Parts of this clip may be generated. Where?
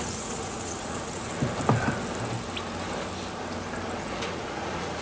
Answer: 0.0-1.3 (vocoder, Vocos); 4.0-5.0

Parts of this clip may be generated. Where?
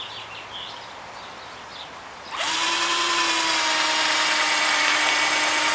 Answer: none